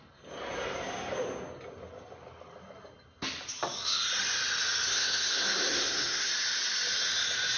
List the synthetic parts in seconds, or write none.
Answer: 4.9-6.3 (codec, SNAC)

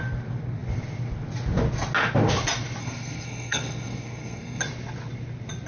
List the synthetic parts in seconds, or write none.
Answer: 2.8-4.6 (codec, SNAC)

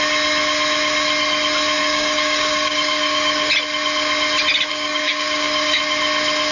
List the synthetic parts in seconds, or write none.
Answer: 1.8-3.5 (codec, DAC); 4.7-5.8